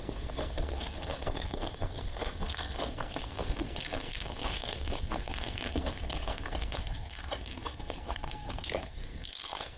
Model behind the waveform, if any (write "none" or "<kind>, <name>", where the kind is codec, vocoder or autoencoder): codec, SNAC